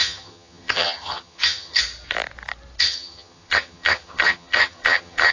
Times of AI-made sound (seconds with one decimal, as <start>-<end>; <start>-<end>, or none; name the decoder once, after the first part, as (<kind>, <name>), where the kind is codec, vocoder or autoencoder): 0.0-1.8 (vocoder, HiFi-GAN); 2.8-5.3